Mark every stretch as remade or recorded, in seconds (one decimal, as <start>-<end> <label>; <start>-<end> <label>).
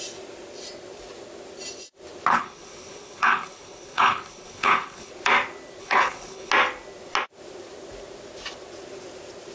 0.0-2.3 recorded; 2.3-5.1 remade; 5.1-5.8 recorded; 5.8-6.5 remade; 6.5-9.5 recorded